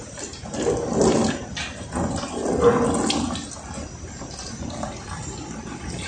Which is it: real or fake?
real